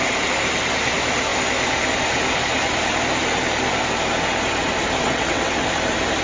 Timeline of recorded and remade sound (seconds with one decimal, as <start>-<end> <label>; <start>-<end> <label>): 0.0-5.0 recorded; 5.0-5.7 remade; 5.7-6.2 recorded